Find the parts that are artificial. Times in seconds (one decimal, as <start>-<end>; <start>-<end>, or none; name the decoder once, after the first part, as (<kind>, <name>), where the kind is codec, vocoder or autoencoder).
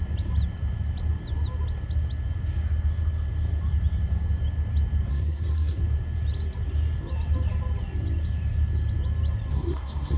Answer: 5.1-5.8 (codec, SNAC); 9.5-10.2